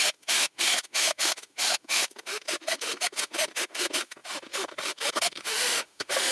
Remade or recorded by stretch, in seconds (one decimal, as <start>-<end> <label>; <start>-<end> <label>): 0.0-6.3 remade